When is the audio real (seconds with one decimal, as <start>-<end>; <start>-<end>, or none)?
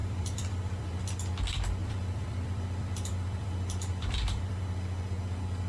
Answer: 1.0-1.8; 4.6-5.7